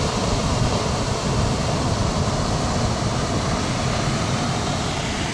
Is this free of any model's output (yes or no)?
yes